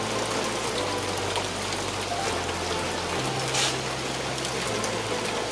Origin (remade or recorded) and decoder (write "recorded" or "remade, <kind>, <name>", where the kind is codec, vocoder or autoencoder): recorded